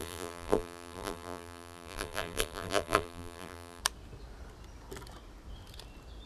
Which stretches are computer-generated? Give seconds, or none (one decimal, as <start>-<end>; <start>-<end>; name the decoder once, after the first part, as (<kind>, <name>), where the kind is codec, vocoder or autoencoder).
0.0-3.8 (vocoder, BigVGAN v2)